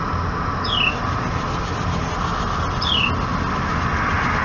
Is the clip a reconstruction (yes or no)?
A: no